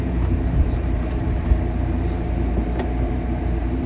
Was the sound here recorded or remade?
remade